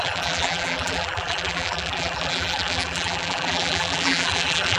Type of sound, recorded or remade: remade